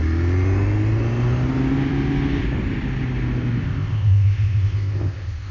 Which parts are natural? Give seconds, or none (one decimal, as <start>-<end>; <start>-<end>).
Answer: 0.0-3.6